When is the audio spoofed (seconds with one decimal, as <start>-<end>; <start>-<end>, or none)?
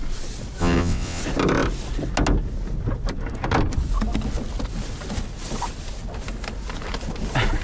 0.6-1.2